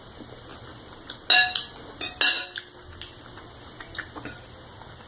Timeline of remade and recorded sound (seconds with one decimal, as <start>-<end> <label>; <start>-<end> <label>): 0.0-5.1 recorded